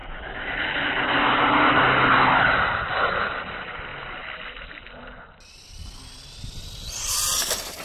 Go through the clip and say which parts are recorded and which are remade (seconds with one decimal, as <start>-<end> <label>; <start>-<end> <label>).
0.0-7.8 recorded